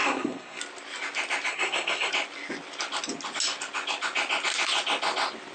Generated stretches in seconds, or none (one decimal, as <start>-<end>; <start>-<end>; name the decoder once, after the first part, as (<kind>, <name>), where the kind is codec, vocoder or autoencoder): 0.0-0.6 (codec, SNAC); 1.5-2.1